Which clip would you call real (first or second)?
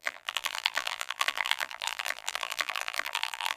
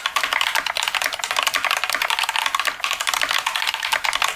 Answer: second